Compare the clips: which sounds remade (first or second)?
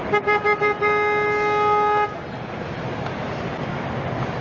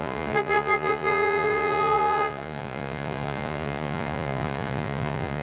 second